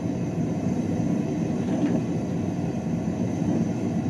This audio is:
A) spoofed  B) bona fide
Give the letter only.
A